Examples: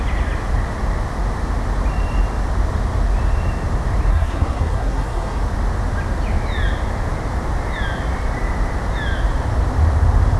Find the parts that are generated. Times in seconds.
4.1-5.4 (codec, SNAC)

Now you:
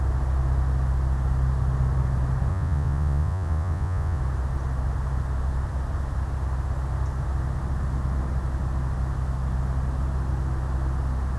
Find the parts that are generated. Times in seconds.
2.5-4.2 (vocoder, Vocos)

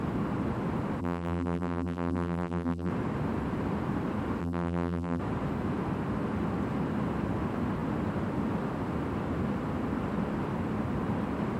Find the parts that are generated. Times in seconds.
1.0-2.9 (vocoder, BigVGAN v2); 4.4-5.2

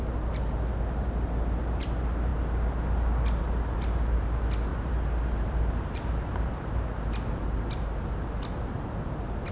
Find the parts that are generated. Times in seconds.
4.7-6.8 (vocoder, BigVGAN v2)

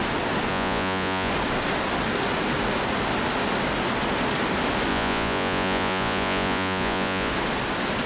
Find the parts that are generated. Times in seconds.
0.5-1.3 (vocoder, Vocos); 4.9-7.3

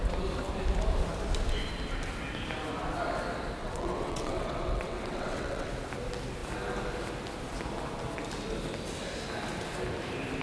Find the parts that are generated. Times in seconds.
3.6-5.7 (vocoder, WaveNeXt)

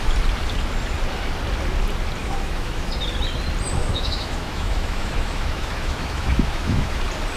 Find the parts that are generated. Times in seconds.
2.2-2.9 (autoencoder, DAC-VAE); 3.8-7.0